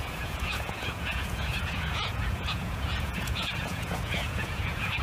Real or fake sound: fake